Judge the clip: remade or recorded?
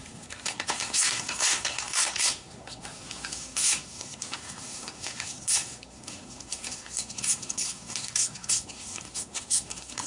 remade